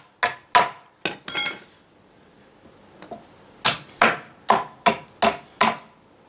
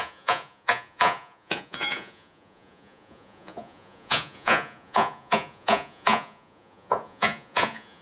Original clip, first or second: first